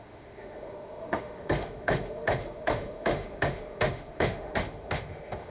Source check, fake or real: fake